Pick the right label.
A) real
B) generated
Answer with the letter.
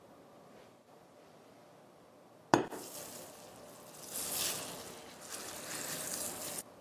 A